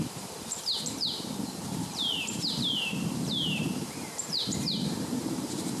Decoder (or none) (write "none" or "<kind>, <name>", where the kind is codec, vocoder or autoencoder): vocoder, BigVGAN v2